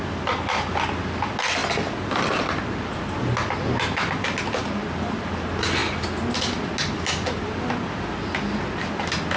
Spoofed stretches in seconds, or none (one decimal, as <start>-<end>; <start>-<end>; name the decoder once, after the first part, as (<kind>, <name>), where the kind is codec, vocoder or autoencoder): none